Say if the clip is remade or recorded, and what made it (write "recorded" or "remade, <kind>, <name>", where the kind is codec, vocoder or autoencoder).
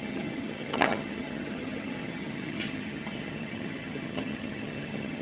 remade, vocoder, HiFi-GAN